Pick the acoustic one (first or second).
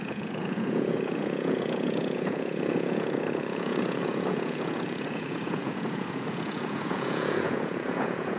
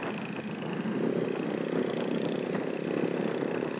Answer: second